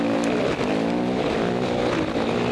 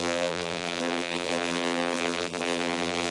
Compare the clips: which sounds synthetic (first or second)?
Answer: second